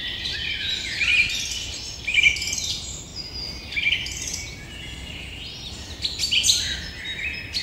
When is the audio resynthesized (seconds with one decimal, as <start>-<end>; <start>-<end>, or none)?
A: 0.0-1.1; 2.7-3.1